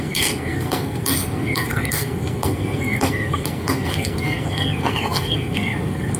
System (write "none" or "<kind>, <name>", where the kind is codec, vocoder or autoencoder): codec, SNAC